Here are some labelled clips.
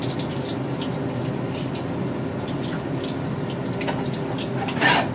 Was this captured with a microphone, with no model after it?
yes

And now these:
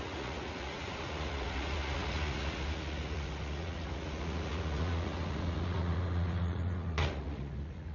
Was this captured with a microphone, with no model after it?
no